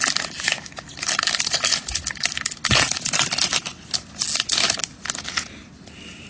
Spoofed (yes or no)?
no